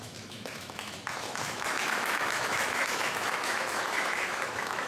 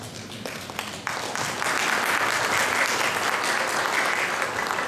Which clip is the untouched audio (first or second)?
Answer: second